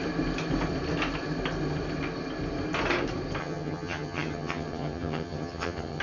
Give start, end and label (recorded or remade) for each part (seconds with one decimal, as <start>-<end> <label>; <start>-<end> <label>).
0.0-3.4 recorded; 3.4-6.0 remade